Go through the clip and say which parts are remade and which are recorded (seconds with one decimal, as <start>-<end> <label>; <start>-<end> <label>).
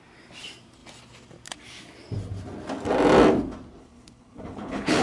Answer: 0.0-3.8 recorded; 3.8-5.0 remade